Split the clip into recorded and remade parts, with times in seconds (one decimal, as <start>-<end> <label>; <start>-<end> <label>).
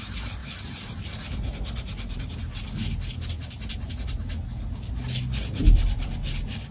0.0-0.4 recorded; 0.4-2.4 remade; 2.4-6.7 recorded